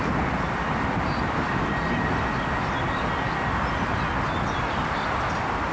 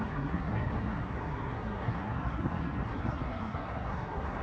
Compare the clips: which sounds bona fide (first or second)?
first